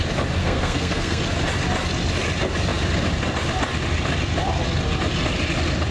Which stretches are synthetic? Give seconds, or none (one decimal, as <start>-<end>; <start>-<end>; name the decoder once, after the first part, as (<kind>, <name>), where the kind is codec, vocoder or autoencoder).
0.4-1.2 (codec, SNAC)